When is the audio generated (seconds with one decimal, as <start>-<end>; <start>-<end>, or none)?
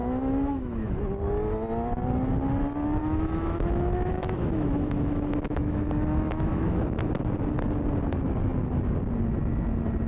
0.0-1.0; 3.0-7.1